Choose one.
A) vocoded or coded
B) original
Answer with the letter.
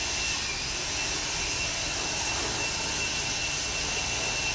B